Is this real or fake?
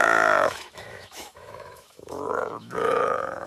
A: fake